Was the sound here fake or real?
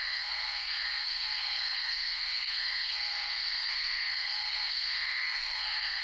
fake